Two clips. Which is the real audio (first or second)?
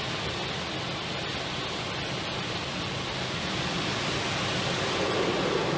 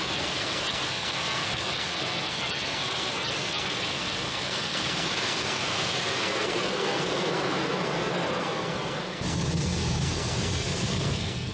first